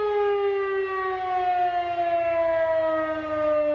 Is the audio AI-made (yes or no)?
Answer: no